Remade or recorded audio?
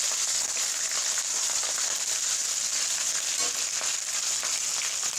recorded